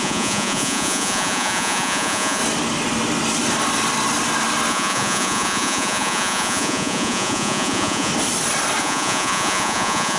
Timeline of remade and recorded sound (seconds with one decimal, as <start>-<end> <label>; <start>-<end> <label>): 0.0-2.4 remade; 2.4-4.7 recorded; 4.7-8.1 remade; 8.1-8.8 recorded; 8.8-10.2 remade